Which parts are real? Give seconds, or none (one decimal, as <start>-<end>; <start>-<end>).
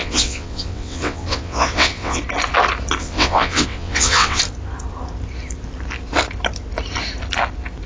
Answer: 2.2-3.0; 4.4-7.9